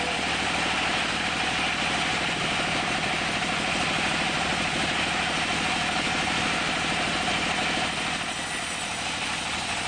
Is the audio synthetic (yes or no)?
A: no